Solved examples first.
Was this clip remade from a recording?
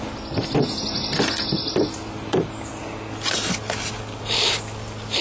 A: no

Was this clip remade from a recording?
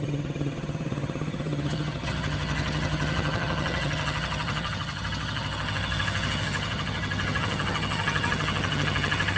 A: yes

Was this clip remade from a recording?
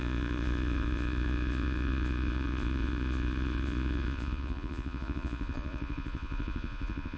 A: yes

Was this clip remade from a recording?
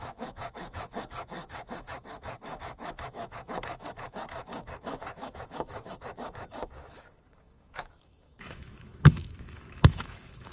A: yes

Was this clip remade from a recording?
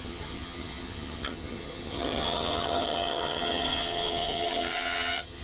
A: yes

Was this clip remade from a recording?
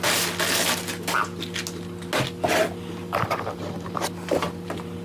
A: no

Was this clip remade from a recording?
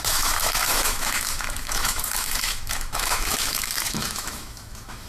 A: yes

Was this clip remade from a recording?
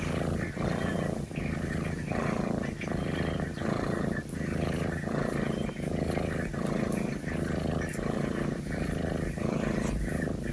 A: no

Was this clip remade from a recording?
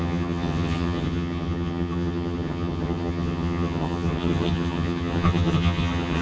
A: yes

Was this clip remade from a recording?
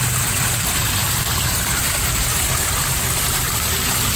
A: yes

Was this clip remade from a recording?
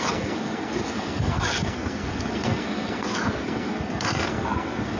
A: yes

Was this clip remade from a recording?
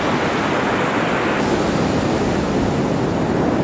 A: no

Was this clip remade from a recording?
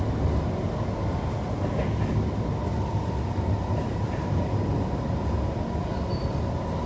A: no